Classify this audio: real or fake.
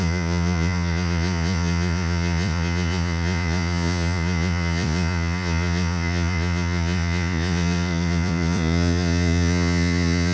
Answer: fake